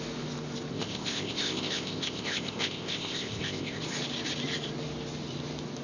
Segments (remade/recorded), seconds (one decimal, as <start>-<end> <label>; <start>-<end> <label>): 0.0-0.7 recorded; 0.7-3.8 remade; 3.8-5.8 recorded